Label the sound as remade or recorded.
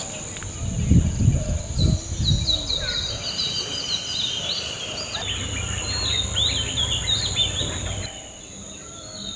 recorded